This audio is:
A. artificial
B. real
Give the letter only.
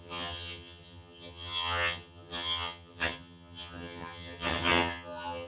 A